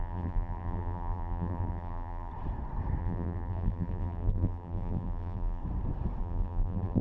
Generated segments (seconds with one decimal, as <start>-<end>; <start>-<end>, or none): 0.0-2.3; 3.0-5.6; 6.2-7.0